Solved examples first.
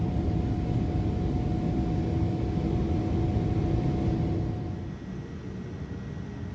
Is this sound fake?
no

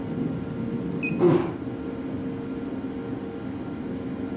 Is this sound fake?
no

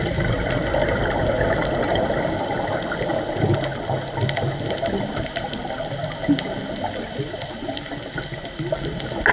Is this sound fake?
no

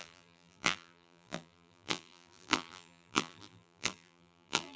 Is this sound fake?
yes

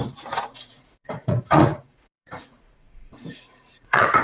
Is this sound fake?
yes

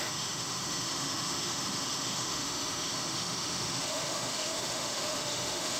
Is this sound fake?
yes